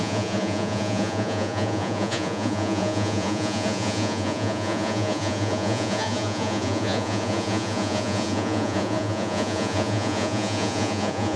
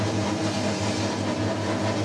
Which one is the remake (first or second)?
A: first